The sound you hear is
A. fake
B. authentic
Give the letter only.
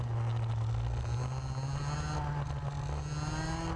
B